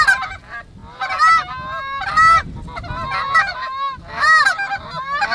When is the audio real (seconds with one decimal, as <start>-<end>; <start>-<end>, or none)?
0.0-5.3